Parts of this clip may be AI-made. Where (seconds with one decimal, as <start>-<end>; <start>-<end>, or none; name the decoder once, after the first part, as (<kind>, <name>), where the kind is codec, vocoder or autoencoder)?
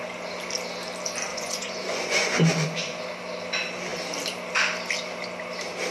1.3-3.0 (vocoder, Vocos)